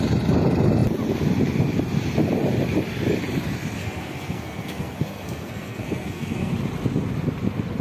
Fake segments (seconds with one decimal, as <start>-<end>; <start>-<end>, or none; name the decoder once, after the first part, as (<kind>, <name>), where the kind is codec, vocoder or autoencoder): 3.8-6.5 (codec, SNAC)